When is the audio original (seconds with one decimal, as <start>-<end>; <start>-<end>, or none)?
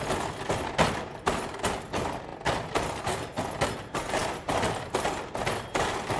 0.0-6.2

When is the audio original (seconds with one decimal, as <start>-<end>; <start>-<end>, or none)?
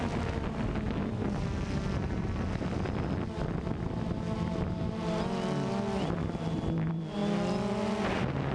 0.0-8.5